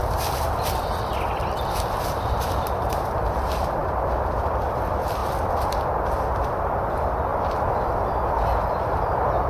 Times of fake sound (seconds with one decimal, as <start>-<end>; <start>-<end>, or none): 0.0-3.8; 4.4-5.2; 6.2-9.5